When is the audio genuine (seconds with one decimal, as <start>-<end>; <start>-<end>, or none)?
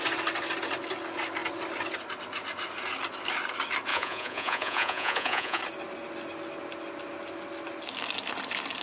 0.0-3.9; 5.6-8.8